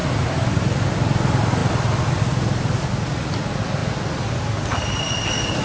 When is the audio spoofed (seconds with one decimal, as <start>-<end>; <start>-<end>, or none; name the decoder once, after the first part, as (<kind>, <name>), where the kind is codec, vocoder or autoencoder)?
0.0-0.9 (vocoder, BigVGAN v2); 1.6-2.3